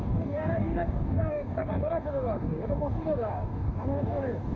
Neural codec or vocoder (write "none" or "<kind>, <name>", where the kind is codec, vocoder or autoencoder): codec, DAC